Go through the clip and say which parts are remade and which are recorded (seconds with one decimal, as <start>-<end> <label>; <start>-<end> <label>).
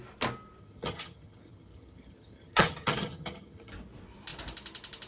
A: 0.0-0.6 recorded; 0.6-3.7 remade; 3.7-5.1 recorded